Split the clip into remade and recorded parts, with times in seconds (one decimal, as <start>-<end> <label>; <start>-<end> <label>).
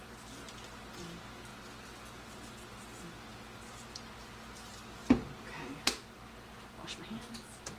0.0-7.8 recorded